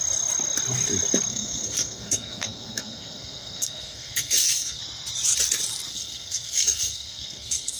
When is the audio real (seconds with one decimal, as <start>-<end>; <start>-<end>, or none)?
0.0-1.3; 4.8-5.9